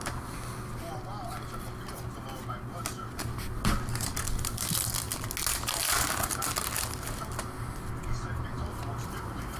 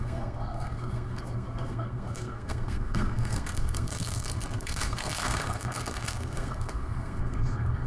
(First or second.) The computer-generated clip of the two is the second